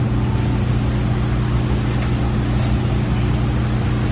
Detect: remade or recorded recorded